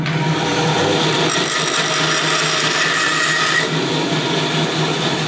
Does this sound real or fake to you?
real